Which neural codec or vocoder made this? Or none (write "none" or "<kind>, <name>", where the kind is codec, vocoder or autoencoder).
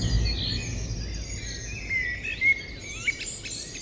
none